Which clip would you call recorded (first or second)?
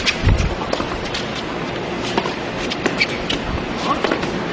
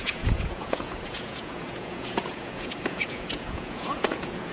first